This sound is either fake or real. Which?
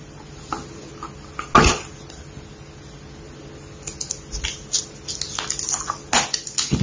real